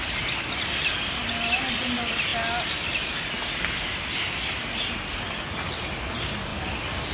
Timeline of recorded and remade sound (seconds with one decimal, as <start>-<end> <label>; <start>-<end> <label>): 0.0-7.1 recorded